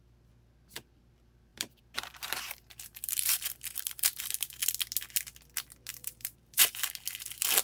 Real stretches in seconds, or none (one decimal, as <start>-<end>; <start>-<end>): 0.0-1.5; 4.6-5.9; 7.0-7.6